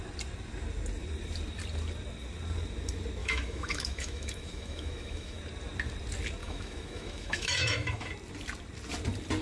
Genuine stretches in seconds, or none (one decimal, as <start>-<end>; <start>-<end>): 0.0-3.2; 5.4-6.4; 8.1-9.4

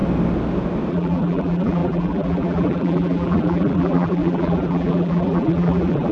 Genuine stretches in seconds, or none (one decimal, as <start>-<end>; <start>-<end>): 0.0-0.9

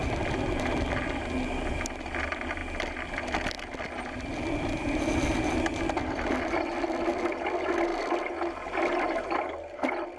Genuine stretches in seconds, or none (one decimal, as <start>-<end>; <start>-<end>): 0.0-10.2